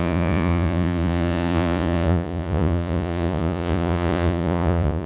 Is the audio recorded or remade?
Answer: remade